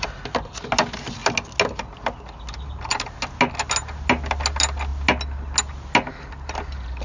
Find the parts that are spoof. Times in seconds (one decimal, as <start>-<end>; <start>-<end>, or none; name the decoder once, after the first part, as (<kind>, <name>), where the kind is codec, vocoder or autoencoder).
none